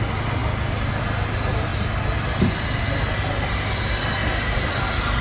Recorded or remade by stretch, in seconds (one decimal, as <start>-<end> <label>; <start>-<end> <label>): 0.0-4.2 recorded; 4.2-4.7 remade; 4.7-5.2 recorded